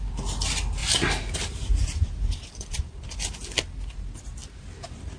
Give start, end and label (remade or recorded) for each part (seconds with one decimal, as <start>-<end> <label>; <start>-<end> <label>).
0.0-0.8 recorded; 0.8-3.9 remade; 3.9-4.4 recorded; 4.4-5.2 remade